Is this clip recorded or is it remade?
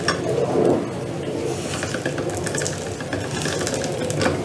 recorded